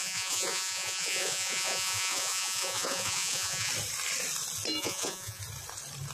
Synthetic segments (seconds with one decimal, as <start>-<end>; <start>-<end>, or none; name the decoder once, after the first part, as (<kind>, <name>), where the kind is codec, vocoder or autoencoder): 0.0-3.7 (vocoder, Vocos); 4.8-5.4